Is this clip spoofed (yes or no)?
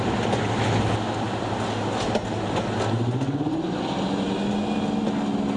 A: no